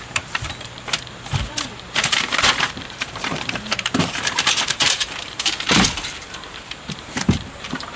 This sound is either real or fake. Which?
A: fake